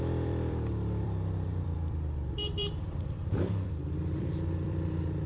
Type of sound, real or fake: fake